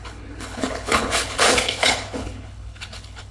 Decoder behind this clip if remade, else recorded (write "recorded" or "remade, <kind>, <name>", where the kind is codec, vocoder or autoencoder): remade, codec, HILCodec